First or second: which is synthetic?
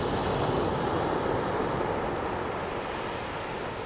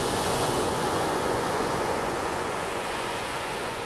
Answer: second